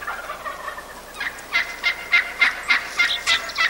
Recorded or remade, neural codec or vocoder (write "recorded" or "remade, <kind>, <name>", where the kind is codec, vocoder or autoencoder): recorded